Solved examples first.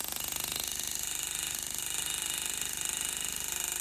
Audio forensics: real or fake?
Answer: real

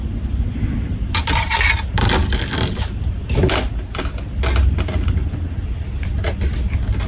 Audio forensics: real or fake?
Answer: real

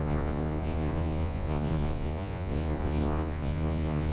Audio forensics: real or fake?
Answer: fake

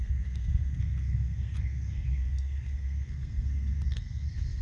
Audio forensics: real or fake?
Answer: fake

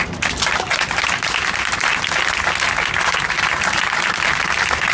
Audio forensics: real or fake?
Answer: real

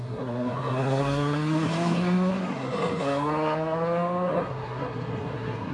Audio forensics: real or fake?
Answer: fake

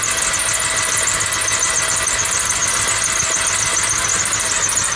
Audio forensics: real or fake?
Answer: real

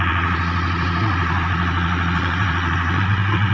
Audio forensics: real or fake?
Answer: fake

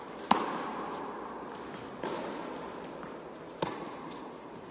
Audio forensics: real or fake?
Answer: real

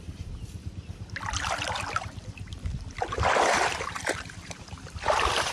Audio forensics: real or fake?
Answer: fake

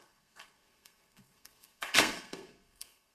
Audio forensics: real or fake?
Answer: fake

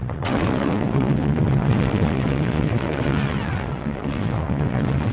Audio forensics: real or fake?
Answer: fake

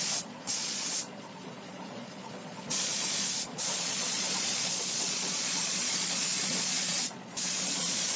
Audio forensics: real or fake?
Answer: fake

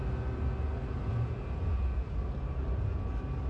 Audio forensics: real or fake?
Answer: real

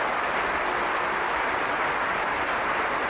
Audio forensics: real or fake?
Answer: real